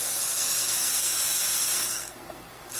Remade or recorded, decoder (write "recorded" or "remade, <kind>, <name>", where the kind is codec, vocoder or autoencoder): remade, codec, SNAC